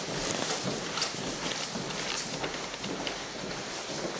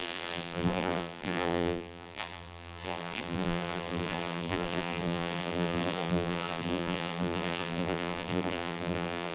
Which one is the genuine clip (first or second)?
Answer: first